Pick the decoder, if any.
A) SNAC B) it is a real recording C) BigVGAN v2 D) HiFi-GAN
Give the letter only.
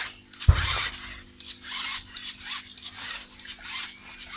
B